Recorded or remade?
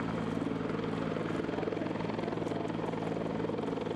recorded